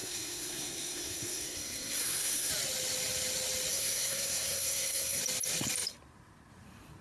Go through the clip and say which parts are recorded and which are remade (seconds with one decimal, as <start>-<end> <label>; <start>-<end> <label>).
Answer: 0.0-2.5 remade; 2.5-3.7 recorded; 3.7-5.2 remade; 5.2-7.0 recorded

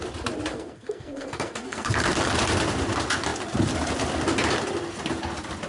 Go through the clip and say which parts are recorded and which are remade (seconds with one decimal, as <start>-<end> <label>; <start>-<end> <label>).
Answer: 0.0-0.5 recorded; 0.5-1.9 remade; 1.9-5.7 recorded

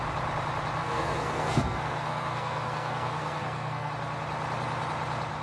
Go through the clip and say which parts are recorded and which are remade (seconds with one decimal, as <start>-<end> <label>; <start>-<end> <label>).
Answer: 0.0-0.8 recorded; 0.8-3.9 remade; 3.9-5.4 recorded

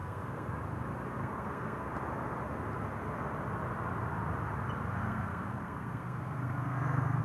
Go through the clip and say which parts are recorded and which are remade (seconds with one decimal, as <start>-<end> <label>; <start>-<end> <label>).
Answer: 0.0-0.5 remade; 0.5-1.2 recorded; 1.2-1.9 remade; 1.9-5.0 recorded; 5.0-7.2 remade

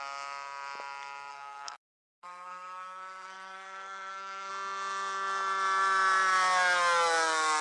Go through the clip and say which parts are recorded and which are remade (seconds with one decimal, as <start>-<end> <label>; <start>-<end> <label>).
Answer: 0.0-1.3 recorded; 1.3-4.5 remade; 4.5-7.6 recorded

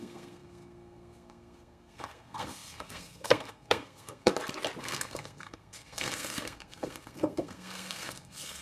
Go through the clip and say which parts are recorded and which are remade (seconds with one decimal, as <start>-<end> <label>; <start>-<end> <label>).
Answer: 0.0-4.3 remade; 4.3-4.8 recorded; 4.8-8.6 remade

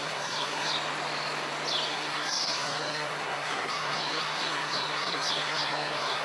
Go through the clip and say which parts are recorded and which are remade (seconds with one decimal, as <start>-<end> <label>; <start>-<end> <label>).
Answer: 0.0-0.7 remade; 0.7-1.9 recorded; 1.9-6.2 remade

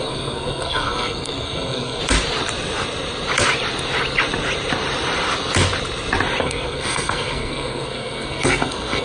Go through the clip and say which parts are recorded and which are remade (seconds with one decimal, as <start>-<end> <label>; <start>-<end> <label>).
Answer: 0.0-2.0 remade; 2.0-6.4 recorded; 6.4-9.0 remade